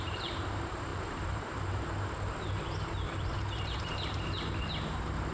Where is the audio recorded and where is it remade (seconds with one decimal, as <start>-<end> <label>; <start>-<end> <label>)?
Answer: 0.0-5.3 remade